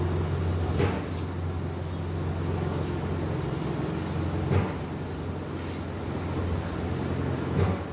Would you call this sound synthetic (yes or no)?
no